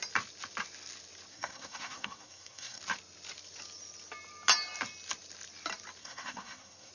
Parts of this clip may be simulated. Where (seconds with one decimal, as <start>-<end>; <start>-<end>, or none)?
1.3-2.8; 6.0-6.9